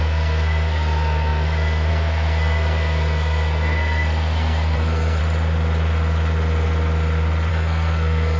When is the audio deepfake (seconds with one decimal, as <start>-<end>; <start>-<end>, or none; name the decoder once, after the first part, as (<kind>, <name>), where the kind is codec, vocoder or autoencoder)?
0.0-5.2 (codec, SNAC); 7.5-8.4

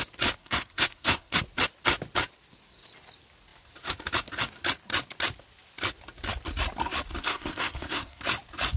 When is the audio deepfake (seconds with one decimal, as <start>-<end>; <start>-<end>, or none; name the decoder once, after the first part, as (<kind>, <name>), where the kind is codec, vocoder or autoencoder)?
0.4-1.4 (codec, SNAC); 7.2-8.2

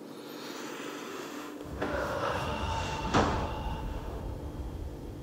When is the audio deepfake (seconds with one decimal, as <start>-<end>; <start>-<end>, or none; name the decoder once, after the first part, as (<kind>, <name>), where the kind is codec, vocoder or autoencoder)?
1.1-4.2 (autoencoder, DAC-VAE)

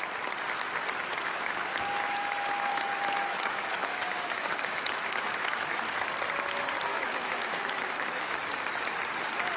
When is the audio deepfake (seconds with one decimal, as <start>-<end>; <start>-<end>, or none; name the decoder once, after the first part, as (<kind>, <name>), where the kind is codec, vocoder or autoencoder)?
1.1-6.1 (autoencoder, DAC-VAE); 6.9-8.5

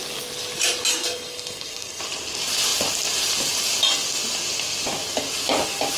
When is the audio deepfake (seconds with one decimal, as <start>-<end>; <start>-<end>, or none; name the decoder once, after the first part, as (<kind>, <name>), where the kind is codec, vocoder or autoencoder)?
0.9-2.0 (codec, SNAC)

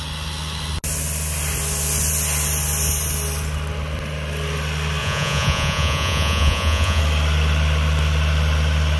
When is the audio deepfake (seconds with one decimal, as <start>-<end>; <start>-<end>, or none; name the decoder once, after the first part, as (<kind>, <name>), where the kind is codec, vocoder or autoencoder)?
5.0-7.0 (vocoder, Vocos)

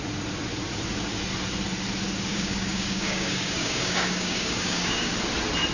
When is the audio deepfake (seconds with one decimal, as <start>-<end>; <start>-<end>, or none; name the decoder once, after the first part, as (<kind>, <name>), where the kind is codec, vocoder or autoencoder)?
2.3-5.1 (codec, DAC)